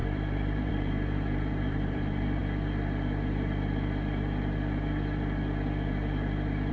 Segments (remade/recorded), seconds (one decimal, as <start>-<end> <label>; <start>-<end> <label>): 0.0-2.4 remade; 2.4-6.7 recorded